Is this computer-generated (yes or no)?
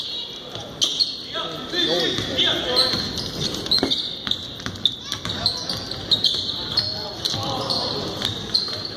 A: no